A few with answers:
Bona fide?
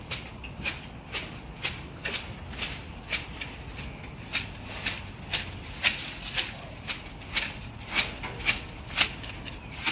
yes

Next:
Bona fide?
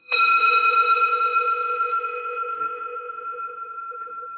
no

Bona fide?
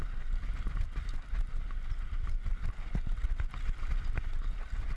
yes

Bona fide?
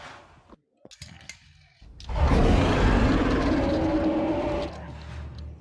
yes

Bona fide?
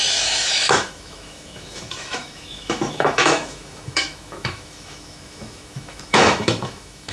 no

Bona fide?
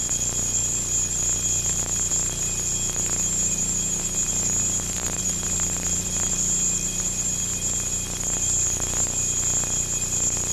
yes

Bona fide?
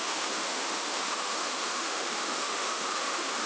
no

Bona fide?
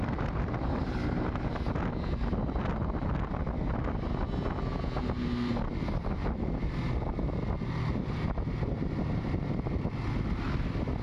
yes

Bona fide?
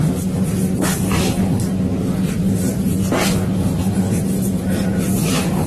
yes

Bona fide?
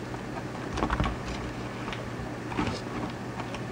yes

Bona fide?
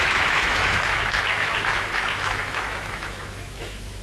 no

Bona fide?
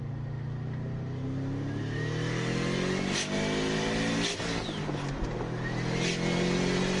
yes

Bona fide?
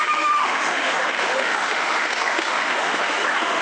no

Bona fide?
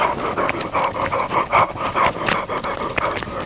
yes